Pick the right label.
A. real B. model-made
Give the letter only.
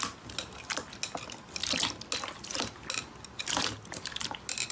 A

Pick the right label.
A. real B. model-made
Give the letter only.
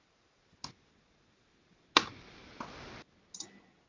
A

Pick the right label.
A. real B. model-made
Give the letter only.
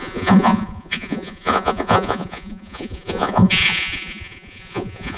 B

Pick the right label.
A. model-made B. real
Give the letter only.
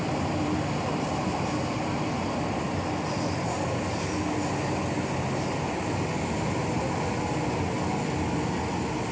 B